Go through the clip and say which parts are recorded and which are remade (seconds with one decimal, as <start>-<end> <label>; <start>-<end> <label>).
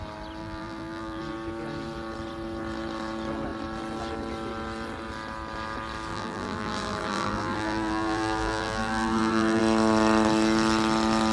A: 0.0-0.4 recorded; 0.4-1.2 remade; 1.2-6.1 recorded; 6.1-9.6 remade; 9.6-11.3 recorded